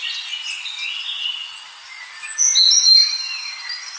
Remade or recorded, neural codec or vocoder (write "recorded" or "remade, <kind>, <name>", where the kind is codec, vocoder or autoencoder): recorded